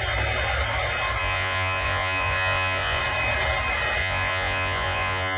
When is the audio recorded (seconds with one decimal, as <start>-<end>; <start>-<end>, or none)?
0.0-1.2; 3.0-4.0